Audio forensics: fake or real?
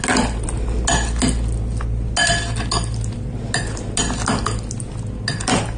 real